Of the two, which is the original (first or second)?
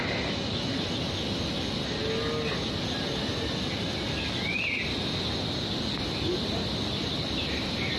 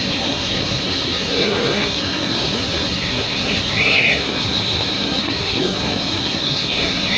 first